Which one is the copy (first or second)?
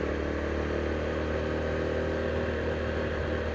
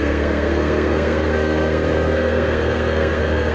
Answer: second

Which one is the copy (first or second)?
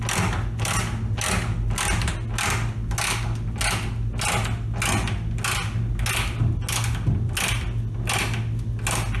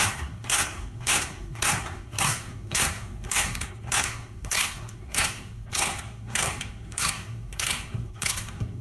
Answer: second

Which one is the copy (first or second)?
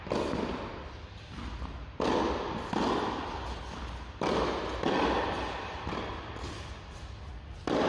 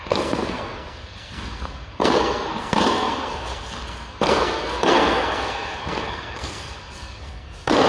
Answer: second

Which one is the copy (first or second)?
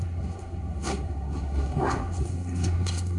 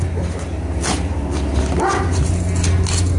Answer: first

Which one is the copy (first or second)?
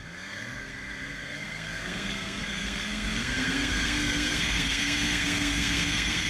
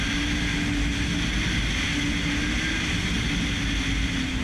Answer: first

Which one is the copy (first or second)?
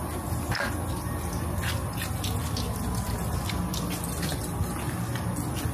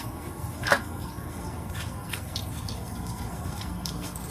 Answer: second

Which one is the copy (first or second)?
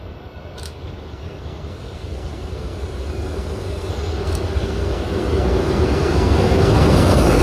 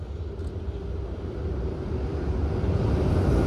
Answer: first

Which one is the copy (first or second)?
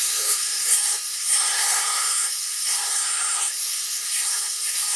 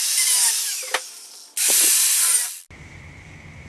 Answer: first